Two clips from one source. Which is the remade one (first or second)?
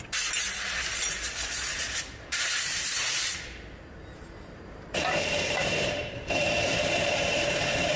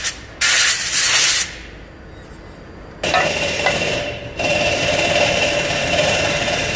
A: first